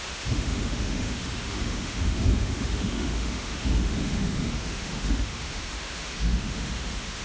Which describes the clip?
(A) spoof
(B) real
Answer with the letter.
A